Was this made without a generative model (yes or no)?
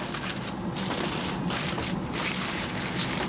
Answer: yes